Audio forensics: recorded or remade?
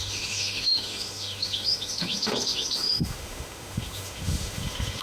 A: remade